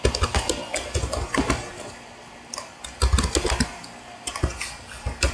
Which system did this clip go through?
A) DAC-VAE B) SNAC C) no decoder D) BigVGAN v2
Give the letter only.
C